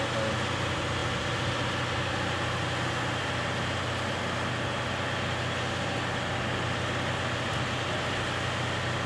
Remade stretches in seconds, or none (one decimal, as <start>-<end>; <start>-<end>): none